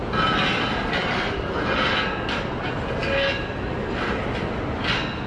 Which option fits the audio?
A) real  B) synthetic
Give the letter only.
A